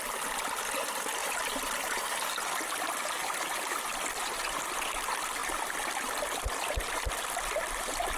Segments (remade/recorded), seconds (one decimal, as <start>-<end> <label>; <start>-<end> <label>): 0.0-3.2 recorded; 3.2-4.8 remade; 4.8-8.2 recorded